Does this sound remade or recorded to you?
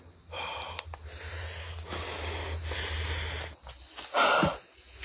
recorded